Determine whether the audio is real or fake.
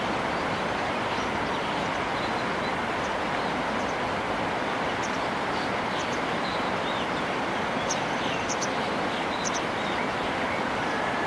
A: real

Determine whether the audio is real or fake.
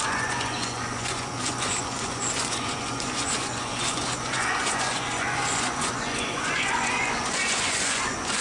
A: fake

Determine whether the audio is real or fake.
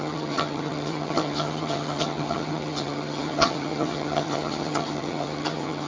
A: fake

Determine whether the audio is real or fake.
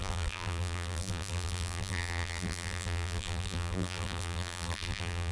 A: fake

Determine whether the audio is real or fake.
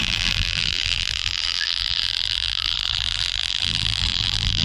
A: fake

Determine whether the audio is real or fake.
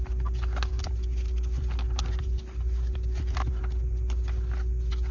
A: real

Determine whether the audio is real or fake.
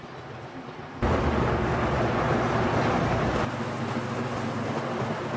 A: real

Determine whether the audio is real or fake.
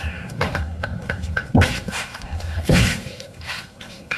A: fake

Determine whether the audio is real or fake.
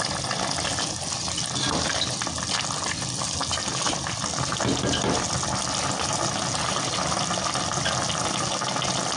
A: real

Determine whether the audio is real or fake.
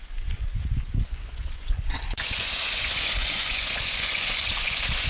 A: fake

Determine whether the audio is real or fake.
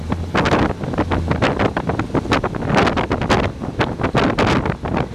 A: real